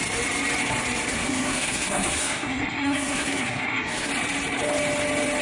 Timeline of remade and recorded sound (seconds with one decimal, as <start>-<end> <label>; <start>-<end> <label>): 0.0-1.1 recorded; 1.1-4.1 remade; 4.1-5.4 recorded